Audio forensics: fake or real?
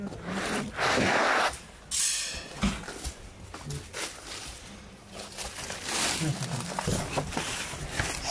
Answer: real